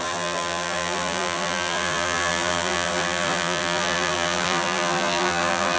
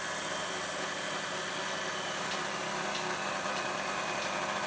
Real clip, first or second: second